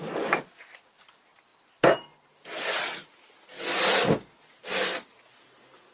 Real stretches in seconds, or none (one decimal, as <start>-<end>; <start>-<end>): 0.0-5.9